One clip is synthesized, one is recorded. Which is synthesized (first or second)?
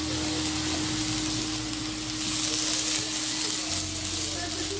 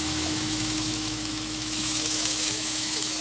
second